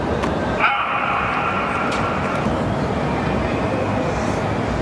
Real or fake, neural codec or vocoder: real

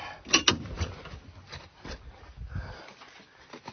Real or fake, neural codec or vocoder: real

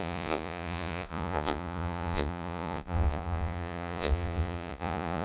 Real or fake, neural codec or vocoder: fake, vocoder, Vocos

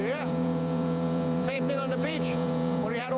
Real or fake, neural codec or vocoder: fake, vocoder, Vocos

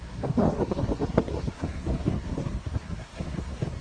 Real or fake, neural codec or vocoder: fake, codec, SNAC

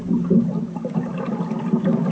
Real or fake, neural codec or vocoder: real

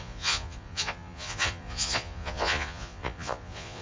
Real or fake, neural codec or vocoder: fake, vocoder, Vocos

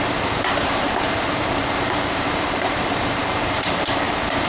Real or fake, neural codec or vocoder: fake, vocoder, BigVGAN v2